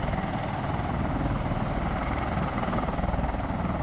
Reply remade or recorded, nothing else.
remade